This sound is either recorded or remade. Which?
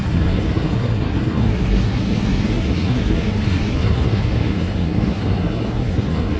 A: remade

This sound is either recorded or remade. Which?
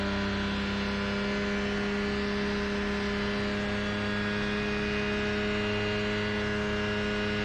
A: recorded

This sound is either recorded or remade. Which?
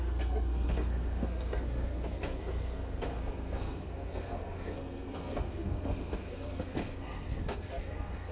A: remade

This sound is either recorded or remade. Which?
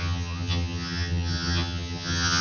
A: remade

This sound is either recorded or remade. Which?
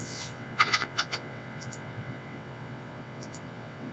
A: remade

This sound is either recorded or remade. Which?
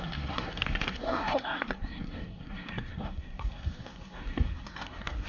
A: remade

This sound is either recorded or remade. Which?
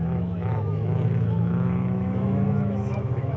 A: remade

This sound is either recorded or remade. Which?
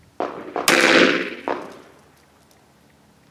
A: recorded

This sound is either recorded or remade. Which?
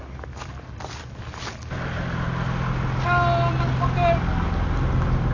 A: recorded